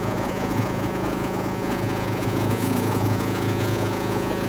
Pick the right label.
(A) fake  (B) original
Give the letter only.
A